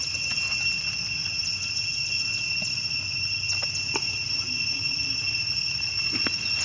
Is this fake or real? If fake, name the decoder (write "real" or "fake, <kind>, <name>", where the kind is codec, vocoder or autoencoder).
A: real